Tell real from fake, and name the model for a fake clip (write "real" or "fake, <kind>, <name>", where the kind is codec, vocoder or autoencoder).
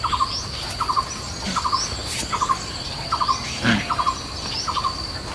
real